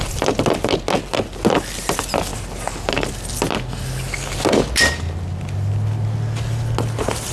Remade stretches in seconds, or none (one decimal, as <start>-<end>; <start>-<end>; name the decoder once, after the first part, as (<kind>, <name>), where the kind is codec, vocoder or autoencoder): none